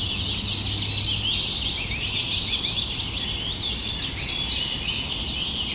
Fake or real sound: real